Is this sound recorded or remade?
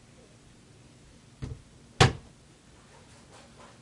recorded